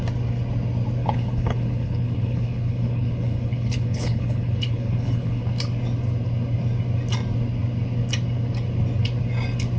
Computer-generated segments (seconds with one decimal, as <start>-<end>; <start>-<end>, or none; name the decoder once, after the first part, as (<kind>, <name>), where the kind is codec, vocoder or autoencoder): 1.0-5.4 (codec, HILCodec)